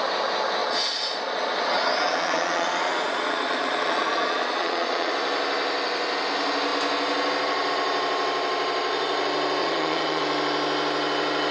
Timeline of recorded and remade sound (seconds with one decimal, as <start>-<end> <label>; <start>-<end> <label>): 0.0-0.6 recorded; 0.6-5.1 remade; 5.1-9.6 recorded; 9.6-10.2 remade; 10.2-11.5 recorded